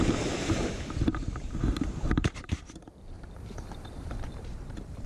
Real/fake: fake